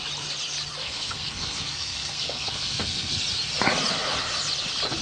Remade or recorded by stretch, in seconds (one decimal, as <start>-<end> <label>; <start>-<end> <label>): 0.0-0.8 recorded; 0.8-3.1 remade; 3.1-5.0 recorded